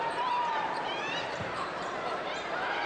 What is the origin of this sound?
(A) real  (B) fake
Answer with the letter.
B